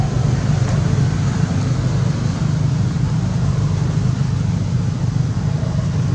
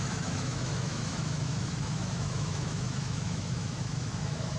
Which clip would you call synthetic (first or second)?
second